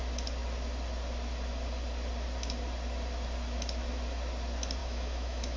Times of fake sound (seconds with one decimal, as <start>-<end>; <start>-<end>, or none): 4.8-5.6